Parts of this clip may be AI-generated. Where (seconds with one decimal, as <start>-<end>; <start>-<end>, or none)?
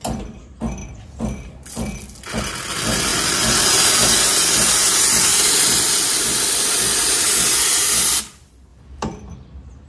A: 8.7-9.9